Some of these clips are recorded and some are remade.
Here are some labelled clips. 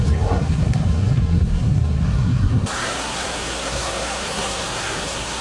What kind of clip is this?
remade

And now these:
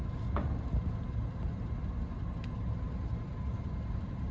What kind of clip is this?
recorded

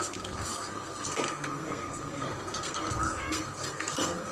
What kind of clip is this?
remade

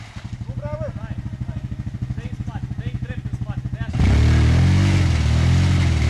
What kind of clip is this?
recorded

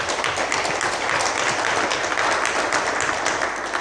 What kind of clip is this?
recorded